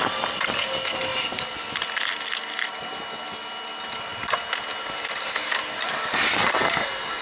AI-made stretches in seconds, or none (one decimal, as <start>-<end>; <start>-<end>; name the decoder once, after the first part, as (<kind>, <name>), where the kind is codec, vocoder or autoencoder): none

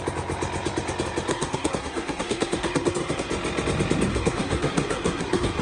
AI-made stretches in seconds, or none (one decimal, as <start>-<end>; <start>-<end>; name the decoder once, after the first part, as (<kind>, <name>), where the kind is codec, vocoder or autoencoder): 1.3-3.3 (codec, SNAC); 4.1-5.6

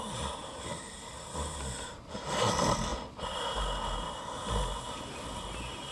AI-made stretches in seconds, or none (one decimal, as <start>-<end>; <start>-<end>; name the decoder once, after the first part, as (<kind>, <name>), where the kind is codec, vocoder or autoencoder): none

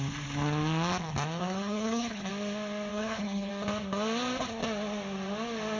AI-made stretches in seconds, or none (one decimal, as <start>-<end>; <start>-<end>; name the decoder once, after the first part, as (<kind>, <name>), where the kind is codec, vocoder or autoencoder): 1.4-2.3 (codec, HILCodec); 2.9-3.5

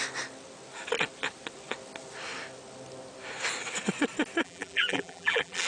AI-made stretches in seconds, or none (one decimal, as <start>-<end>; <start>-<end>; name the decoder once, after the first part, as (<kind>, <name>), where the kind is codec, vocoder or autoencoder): 4.4-5.7 (vocoder, BigVGAN v2)

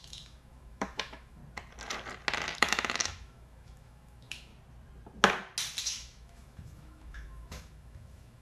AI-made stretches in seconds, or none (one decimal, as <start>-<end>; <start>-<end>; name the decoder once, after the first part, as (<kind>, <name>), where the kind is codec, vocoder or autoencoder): 0.0-1.4 (autoencoder, DAC-VAE); 2.6-4.5; 5.8-8.4

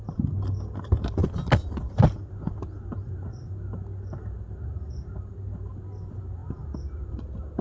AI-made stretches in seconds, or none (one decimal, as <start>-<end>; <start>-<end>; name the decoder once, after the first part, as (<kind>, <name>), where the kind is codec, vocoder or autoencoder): none